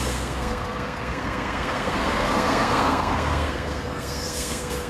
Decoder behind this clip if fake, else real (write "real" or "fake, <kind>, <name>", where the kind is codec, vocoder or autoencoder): fake, codec, SNAC